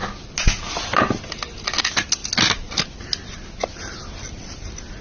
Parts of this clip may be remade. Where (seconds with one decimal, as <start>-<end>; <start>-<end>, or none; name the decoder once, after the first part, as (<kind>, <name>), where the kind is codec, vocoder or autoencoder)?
none